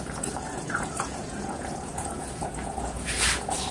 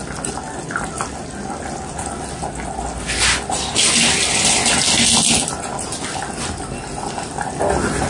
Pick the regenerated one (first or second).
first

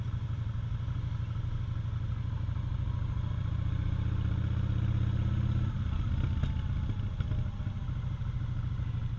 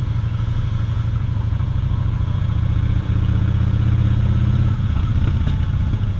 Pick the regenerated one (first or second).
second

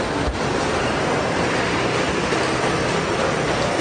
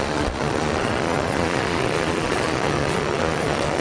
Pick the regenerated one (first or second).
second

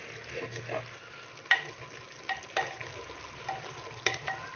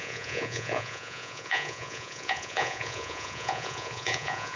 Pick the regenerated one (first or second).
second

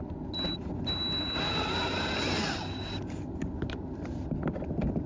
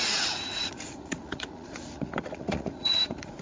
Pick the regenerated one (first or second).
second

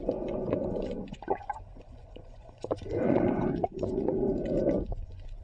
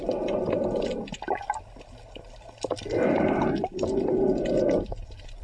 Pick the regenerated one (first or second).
first